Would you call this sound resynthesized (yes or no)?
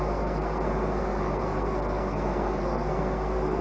yes